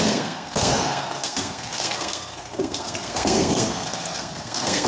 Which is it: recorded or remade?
remade